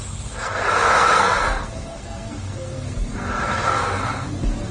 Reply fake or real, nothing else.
fake